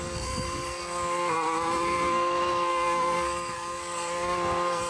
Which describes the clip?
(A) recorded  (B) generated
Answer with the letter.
B